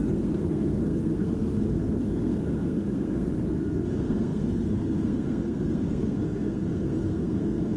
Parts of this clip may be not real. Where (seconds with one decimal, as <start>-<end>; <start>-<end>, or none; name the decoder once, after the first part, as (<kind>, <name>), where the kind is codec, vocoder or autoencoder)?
0.0-7.8 (codec, SNAC)